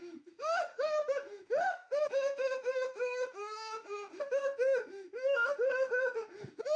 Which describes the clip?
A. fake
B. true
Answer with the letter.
A